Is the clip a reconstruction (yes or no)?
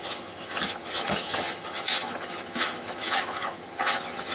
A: yes